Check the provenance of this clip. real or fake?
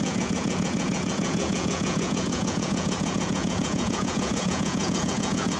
fake